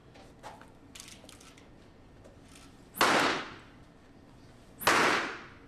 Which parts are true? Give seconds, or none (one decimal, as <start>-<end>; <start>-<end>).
0.0-5.7